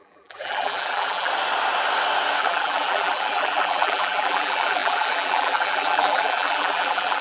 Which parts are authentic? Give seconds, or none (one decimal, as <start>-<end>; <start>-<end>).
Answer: 1.3-2.4